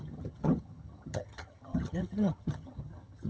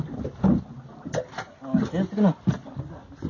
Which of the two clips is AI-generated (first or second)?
first